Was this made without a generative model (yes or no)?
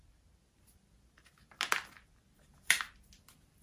yes